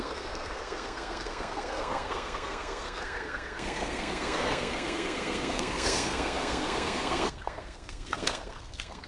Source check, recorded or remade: remade